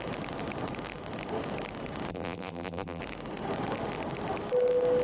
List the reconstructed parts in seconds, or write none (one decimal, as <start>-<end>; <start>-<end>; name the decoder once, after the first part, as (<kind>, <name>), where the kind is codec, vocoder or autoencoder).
2.1-3.0 (vocoder, BigVGAN v2)